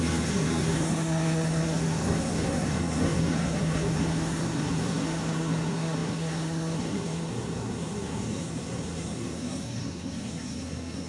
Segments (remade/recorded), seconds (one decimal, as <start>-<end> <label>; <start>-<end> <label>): 0.0-11.1 remade